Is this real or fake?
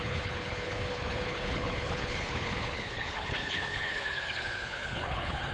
fake